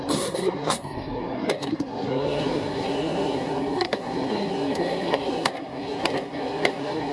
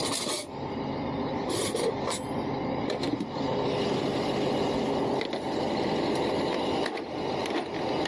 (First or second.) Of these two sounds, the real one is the second